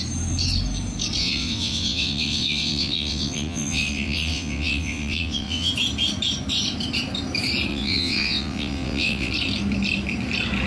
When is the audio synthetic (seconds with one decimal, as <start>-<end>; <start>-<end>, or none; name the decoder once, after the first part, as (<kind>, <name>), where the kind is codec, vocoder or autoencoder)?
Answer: 1.2-5.7 (vocoder, WaveNeXt); 7.7-9.3